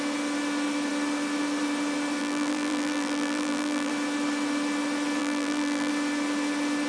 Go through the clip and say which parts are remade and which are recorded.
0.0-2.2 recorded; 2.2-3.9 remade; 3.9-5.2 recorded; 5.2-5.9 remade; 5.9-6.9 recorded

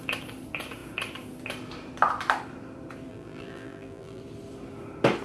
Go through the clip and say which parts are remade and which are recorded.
0.0-3.1 recorded; 3.1-4.2 remade; 4.2-5.2 recorded

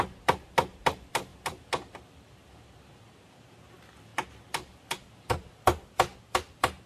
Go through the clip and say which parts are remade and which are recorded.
0.0-6.9 recorded

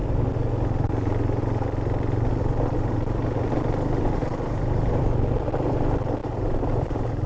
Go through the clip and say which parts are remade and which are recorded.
0.0-4.2 recorded; 4.2-5.0 remade; 5.0-6.2 recorded; 6.2-7.3 remade

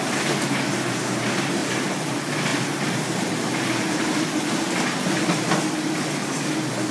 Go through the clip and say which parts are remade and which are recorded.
0.0-1.6 recorded; 1.6-2.1 remade; 2.1-6.9 recorded